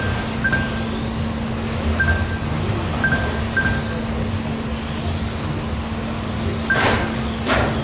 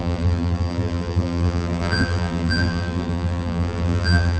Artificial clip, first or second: second